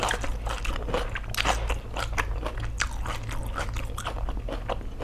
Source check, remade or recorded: recorded